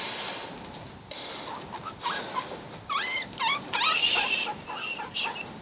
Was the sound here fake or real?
real